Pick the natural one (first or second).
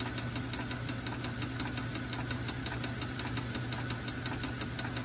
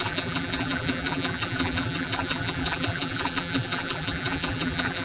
first